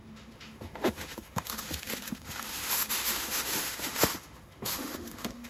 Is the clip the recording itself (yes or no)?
no